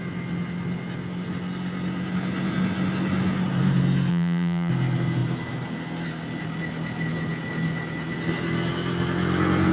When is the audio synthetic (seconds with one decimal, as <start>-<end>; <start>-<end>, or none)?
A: 4.1-4.7